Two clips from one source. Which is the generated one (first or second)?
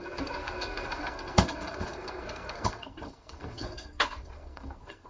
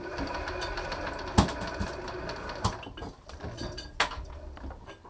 first